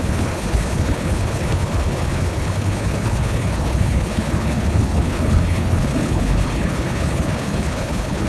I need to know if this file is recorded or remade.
remade